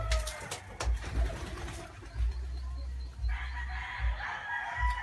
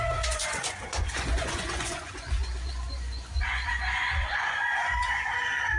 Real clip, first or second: first